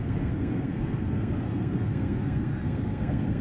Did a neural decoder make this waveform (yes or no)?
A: yes